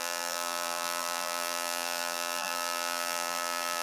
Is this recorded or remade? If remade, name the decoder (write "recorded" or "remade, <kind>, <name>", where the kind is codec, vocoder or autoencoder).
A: remade, vocoder, BigVGAN v2